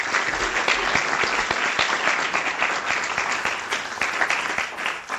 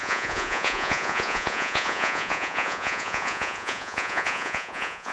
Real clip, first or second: first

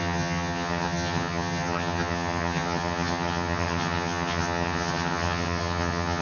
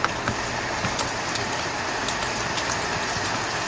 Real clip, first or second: second